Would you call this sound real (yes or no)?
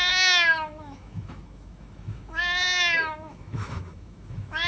no